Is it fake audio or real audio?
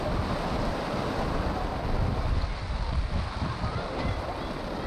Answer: real